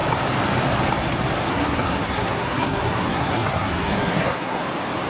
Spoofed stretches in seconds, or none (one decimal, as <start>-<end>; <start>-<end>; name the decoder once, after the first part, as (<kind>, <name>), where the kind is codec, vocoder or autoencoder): 1.5-4.6 (codec, SNAC)